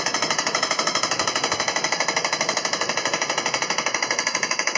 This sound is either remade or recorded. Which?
remade